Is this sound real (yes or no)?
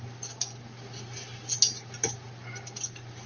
yes